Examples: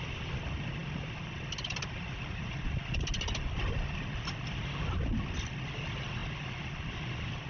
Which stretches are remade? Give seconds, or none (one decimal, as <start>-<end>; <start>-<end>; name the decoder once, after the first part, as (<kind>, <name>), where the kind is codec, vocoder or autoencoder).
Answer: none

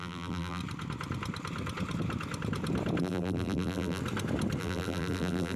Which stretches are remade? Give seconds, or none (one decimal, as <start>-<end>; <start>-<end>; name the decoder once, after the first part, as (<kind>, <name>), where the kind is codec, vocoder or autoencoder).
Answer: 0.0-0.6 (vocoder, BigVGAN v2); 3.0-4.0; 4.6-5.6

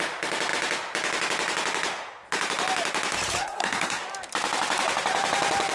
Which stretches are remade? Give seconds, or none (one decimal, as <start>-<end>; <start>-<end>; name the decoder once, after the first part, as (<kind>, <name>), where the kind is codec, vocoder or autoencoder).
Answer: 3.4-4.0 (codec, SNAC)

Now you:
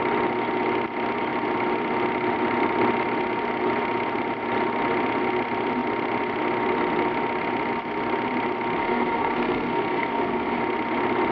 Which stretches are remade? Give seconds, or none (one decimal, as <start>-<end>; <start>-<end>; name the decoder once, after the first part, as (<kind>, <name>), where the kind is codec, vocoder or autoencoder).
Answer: 8.8-10.6 (codec, SNAC)

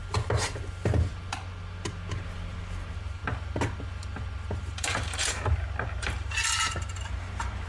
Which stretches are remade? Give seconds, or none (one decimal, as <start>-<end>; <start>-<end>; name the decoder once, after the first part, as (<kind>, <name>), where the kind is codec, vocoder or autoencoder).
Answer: 2.1-3.2 (vocoder, BigVGAN v2); 4.6-7.7

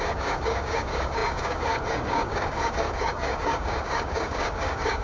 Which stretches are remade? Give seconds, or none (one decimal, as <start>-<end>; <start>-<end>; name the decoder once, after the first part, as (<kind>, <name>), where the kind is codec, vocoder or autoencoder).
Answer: 0.0-5.0 (codec, DAC)

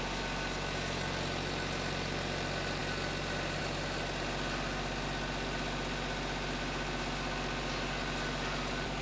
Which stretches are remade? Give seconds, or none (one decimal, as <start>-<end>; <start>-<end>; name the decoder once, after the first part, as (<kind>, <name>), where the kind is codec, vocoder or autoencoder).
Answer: none

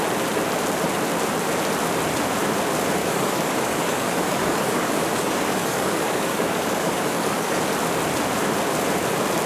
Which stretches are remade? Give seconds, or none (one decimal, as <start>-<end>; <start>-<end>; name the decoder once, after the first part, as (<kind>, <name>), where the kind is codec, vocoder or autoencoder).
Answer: 3.0-7.7 (codec, DAC)